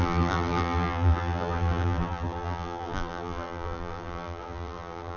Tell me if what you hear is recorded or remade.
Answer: remade